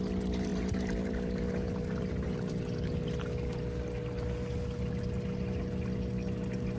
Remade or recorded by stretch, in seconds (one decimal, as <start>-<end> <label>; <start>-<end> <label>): 0.0-0.5 recorded; 0.5-1.7 remade; 1.7-6.8 recorded